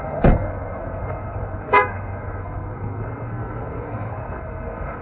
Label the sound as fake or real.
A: fake